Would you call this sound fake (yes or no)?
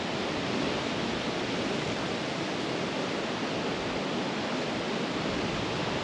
no